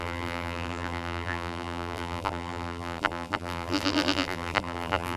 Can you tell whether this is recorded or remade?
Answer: remade